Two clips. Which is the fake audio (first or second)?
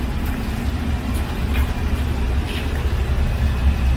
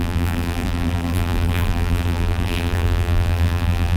second